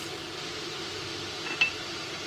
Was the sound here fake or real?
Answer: real